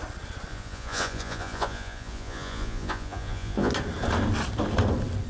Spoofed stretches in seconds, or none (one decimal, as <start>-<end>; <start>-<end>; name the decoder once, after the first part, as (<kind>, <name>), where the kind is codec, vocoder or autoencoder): 0.5-3.7 (vocoder, Vocos)